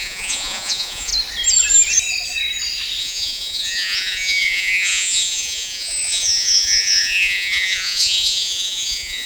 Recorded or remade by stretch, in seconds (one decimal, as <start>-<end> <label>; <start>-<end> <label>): 0.0-1.1 remade; 1.1-3.0 recorded; 3.0-9.3 remade